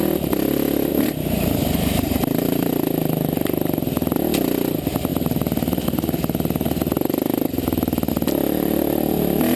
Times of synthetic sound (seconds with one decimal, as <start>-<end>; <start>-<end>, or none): 0.9-2.7

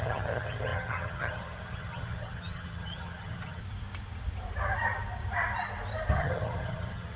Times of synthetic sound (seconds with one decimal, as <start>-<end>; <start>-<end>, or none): 0.0-3.6; 6.2-7.2

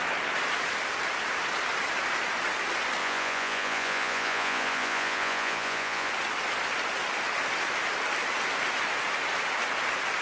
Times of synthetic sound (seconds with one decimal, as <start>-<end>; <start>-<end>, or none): 3.0-6.1

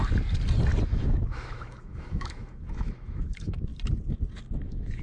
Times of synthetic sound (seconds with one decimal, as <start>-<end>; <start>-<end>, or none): 0.9-3.7; 4.6-5.0

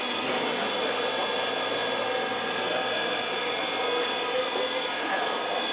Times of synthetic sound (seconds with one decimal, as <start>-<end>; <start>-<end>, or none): none